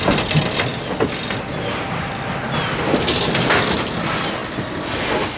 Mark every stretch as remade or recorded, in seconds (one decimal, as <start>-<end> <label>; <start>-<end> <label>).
0.0-5.4 recorded